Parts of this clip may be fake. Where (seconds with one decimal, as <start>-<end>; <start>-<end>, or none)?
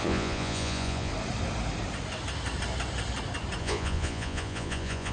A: 0.0-1.1; 3.6-5.1